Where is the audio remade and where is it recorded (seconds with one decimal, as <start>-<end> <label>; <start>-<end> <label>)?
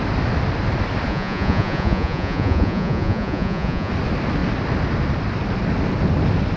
0.0-1.1 recorded; 1.1-3.9 remade; 3.9-6.6 recorded